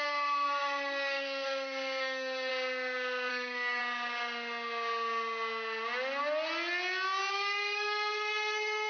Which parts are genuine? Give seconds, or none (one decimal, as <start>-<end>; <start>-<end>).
2.5-3.3; 3.8-7.3